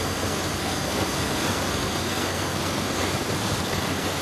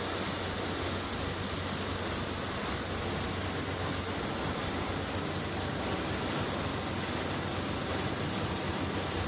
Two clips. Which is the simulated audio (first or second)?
first